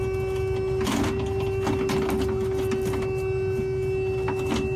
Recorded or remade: recorded